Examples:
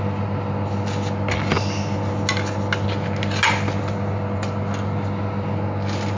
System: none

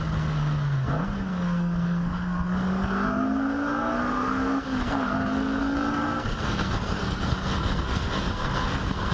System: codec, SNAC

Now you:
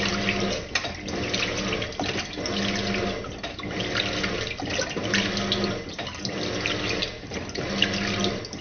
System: none